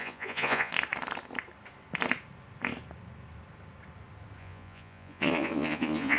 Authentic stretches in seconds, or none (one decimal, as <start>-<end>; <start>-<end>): 0.7-4.4